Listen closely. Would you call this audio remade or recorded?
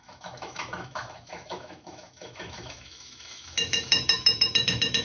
remade